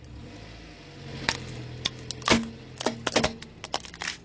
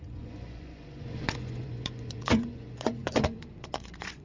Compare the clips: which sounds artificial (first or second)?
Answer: second